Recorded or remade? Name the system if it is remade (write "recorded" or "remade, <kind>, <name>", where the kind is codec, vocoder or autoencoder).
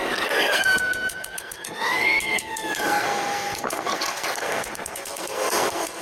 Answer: remade, codec, SNAC